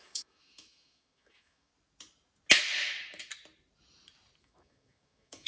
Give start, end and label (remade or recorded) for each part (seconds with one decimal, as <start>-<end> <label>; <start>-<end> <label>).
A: 0.0-1.7 remade; 1.7-4.4 recorded; 4.4-5.5 remade